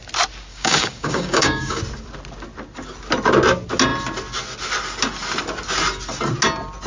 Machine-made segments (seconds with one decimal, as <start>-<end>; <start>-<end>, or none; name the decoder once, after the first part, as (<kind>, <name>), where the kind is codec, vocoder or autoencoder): 0.5-1.8 (codec, DAC)